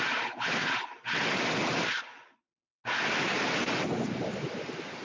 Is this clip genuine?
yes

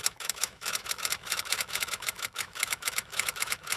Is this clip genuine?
no